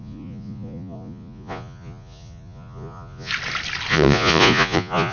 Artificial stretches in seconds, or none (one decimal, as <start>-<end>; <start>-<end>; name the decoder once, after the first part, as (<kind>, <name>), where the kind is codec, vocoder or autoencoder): 0.0-3.3 (vocoder, Vocos); 3.9-5.1